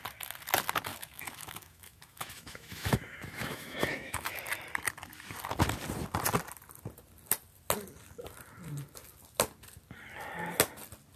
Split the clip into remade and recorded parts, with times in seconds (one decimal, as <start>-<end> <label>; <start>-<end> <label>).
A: 0.0-0.9 recorded; 0.9-4.4 remade; 4.4-11.2 recorded